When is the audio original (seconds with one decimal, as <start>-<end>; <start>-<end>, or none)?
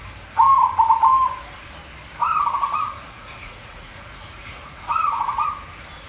0.0-2.6; 5.5-6.1